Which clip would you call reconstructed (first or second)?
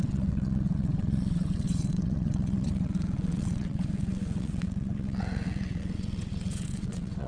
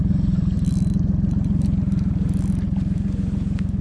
first